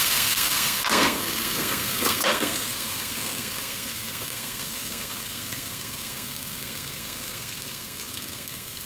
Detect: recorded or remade remade